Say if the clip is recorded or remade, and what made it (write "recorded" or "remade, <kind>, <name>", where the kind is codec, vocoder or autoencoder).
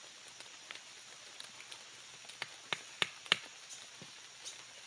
recorded